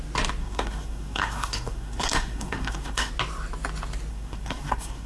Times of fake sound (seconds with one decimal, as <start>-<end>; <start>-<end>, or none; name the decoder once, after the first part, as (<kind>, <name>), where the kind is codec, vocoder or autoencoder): 0.4-3.1 (codec, SNAC); 4.1-5.1